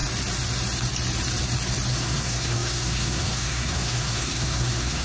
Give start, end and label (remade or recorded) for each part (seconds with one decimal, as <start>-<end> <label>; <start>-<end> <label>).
0.0-1.9 recorded; 1.9-5.0 remade